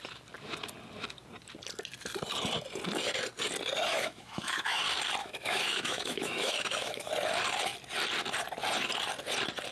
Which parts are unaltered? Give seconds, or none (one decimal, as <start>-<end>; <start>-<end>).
0.0-3.9; 4.8-5.2; 7.1-9.7